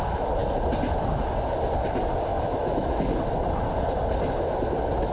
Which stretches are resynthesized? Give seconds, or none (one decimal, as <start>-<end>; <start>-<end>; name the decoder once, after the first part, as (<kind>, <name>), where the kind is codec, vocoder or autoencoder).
2.3-3.1 (autoencoder, DAC-VAE)